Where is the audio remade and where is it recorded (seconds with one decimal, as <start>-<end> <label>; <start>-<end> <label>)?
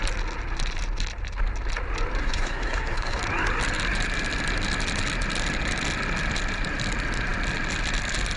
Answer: 0.0-2.2 recorded; 2.2-3.2 remade; 3.2-8.4 recorded